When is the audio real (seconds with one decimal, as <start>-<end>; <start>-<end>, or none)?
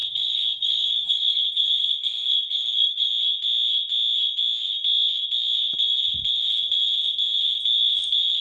3.1-8.4